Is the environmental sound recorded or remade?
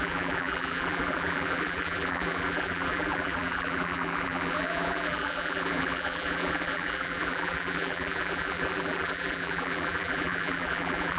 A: remade